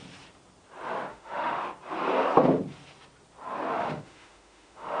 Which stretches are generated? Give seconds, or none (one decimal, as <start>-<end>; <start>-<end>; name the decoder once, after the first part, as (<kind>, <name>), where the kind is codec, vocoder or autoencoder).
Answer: 1.1-1.6 (autoencoder, DAC-VAE); 3.7-5.0